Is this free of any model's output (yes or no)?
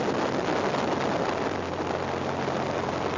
yes